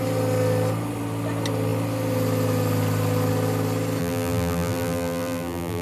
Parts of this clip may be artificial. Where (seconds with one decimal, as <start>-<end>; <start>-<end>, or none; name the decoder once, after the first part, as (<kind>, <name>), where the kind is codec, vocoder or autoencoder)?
4.0-5.8 (vocoder, BigVGAN v2)